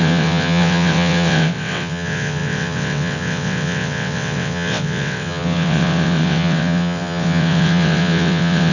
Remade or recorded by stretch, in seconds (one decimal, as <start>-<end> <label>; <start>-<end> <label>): 0.0-8.7 remade